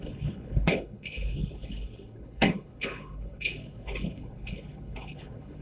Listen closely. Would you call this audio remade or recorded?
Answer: remade